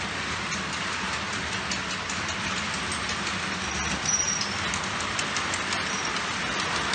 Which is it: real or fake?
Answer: real